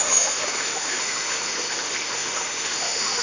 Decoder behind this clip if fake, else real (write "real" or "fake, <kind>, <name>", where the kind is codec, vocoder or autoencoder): fake, autoencoder, DAC-VAE